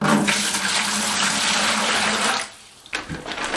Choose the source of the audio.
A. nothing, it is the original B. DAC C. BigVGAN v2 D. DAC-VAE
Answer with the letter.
A